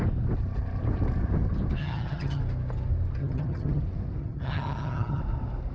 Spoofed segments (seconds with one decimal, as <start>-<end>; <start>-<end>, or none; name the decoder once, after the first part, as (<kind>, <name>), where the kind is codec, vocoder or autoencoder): 1.8-2.4 (vocoder, HiFi-GAN); 3.2-3.8; 4.2-5.2